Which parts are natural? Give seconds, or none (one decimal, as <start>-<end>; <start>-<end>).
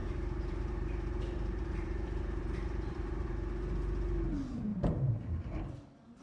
3.3-4.7; 5.6-6.2